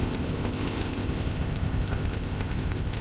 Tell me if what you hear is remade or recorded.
remade